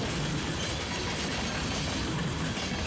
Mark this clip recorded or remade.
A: recorded